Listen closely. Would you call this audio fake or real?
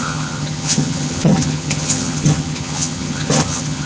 fake